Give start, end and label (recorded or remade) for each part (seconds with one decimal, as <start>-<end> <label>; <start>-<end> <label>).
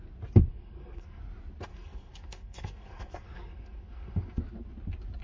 0.0-0.5 recorded; 0.5-1.2 remade; 1.2-1.7 recorded; 1.7-4.4 remade; 4.4-5.2 recorded